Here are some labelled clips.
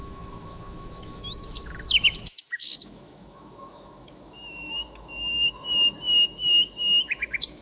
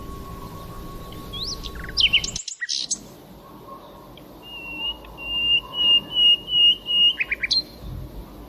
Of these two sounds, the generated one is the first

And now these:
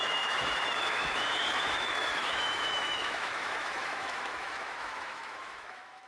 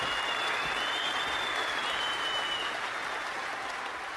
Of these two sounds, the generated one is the first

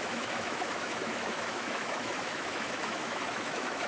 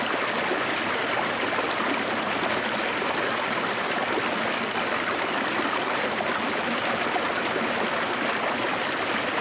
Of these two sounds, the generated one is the first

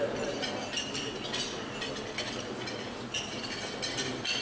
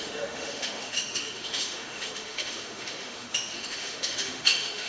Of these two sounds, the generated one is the second